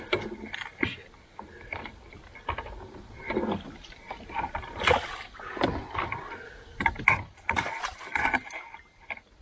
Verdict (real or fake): real